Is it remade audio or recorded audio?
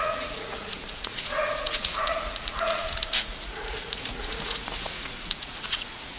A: remade